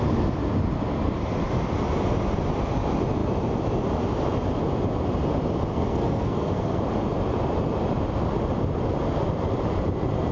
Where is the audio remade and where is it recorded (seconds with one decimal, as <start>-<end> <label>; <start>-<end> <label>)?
0.0-5.7 recorded; 5.7-6.8 remade; 6.8-10.3 recorded